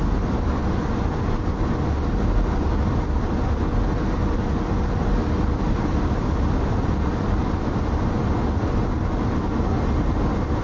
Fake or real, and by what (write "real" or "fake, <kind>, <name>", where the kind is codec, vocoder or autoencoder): real